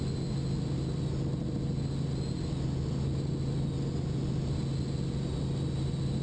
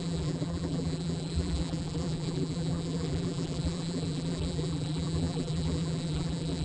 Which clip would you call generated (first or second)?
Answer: second